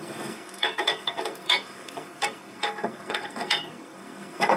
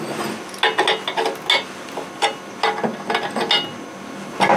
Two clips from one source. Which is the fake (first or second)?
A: first